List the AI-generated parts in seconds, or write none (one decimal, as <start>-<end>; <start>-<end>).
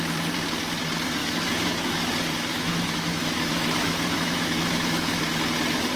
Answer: 1.2-2.1; 2.5-5.3